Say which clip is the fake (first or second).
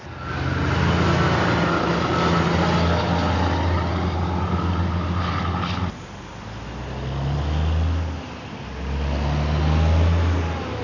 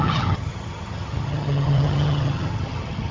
second